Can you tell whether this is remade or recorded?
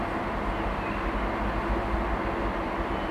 recorded